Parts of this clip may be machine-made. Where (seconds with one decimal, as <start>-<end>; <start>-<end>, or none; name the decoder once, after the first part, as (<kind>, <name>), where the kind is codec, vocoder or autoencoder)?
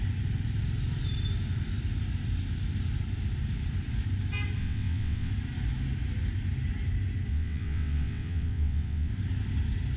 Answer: 4.6-5.3 (vocoder, WaveNeXt); 7.3-9.1